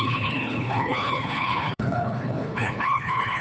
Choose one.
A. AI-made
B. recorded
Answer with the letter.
A